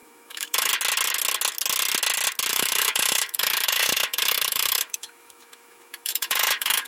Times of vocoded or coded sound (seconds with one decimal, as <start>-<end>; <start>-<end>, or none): 0.0-0.7; 2.5-6.9